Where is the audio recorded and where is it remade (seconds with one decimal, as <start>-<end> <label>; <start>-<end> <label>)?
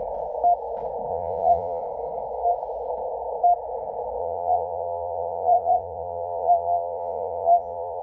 0.0-1.1 recorded; 1.1-1.8 remade; 1.8-4.2 recorded; 4.2-8.0 remade